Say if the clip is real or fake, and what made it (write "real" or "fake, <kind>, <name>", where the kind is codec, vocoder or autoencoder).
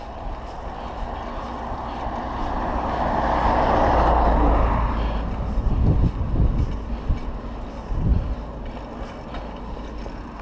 real